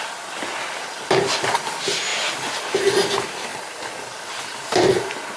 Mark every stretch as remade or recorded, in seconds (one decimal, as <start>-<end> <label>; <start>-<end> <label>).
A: 0.0-5.4 recorded